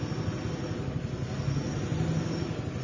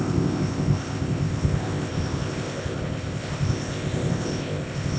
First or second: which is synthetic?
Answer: second